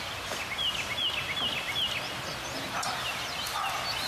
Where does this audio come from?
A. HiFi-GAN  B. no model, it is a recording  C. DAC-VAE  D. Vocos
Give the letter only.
B